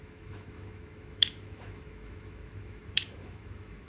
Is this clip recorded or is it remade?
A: remade